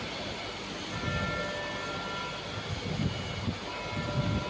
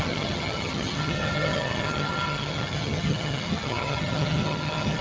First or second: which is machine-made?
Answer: second